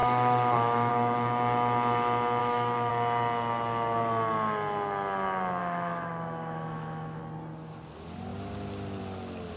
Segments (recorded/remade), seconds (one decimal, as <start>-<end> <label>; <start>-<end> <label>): 0.0-0.9 remade; 0.9-2.4 recorded; 2.4-2.9 remade; 2.9-5.6 recorded; 5.6-7.2 remade; 7.2-9.6 recorded